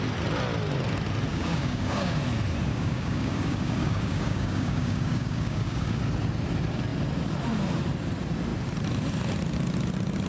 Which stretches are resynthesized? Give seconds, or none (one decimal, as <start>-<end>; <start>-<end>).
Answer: 1.3-2.2; 2.7-6.0